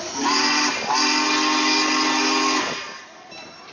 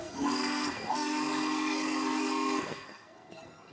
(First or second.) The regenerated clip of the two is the second